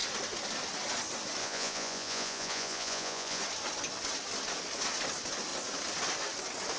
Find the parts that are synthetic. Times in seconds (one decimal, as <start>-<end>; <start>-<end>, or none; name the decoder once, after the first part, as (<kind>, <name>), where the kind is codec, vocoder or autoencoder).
1.4-3.4 (vocoder, Vocos)